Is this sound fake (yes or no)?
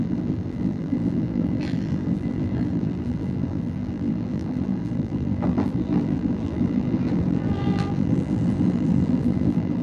yes